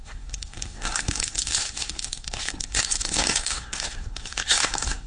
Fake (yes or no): yes